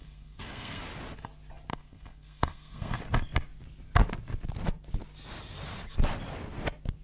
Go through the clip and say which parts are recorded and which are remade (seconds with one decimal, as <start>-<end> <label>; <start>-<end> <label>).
0.0-0.8 remade; 0.8-1.7 recorded; 1.7-3.0 remade; 3.0-7.0 recorded